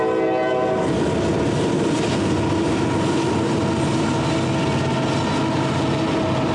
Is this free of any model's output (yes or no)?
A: yes